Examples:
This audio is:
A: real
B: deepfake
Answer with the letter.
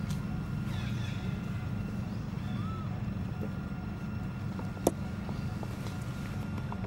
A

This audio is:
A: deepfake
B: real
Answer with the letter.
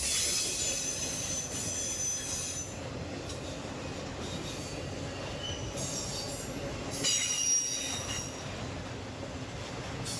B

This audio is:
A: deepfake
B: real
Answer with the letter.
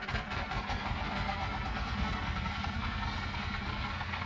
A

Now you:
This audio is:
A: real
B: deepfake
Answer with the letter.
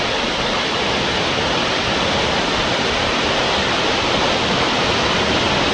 B